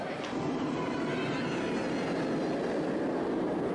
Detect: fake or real real